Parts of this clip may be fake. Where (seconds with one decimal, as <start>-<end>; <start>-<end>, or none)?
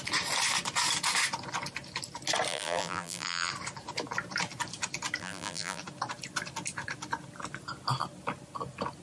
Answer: 2.5-3.5; 5.2-5.8